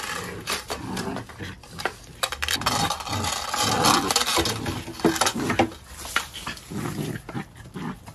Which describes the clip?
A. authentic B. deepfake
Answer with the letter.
A